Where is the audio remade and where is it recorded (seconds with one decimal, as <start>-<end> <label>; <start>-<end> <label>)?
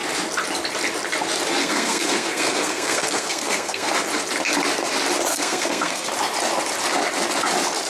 0.0-1.6 recorded; 1.6-3.9 remade; 3.9-5.3 recorded; 5.3-6.1 remade; 6.1-7.9 recorded